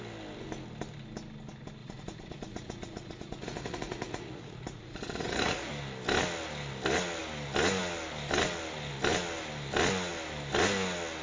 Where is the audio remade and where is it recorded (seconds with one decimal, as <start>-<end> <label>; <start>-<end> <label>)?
0.0-1.8 recorded; 1.8-5.7 remade; 5.7-11.2 recorded